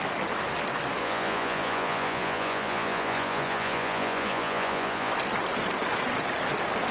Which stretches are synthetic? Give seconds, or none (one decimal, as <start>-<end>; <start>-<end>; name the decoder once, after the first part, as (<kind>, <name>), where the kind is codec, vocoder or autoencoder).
1.0-5.1 (vocoder, Vocos)